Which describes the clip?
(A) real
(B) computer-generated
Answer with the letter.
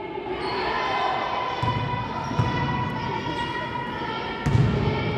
A